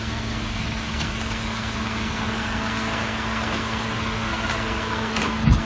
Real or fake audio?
fake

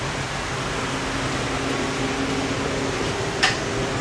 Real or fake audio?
real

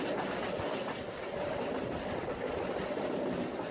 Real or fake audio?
real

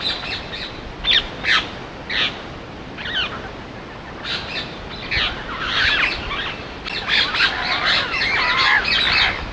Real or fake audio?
real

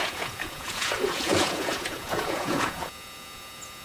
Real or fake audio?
fake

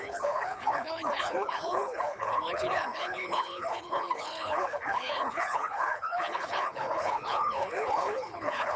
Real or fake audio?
fake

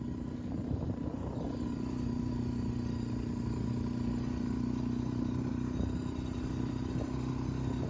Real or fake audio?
real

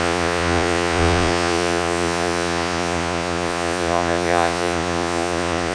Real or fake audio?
fake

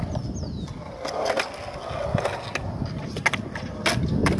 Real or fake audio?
real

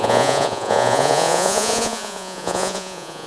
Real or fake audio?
fake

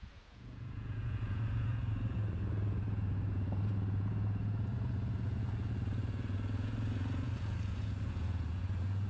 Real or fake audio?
fake